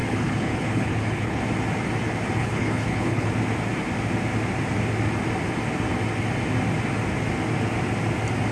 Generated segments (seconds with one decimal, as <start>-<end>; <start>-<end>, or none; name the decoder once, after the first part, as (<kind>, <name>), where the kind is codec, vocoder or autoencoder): 0.0-1.4 (codec, HILCodec); 2.4-3.3